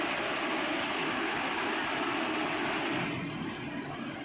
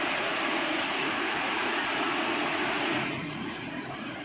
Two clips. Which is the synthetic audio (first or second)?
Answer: second